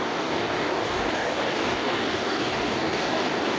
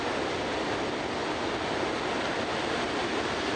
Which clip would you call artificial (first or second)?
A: first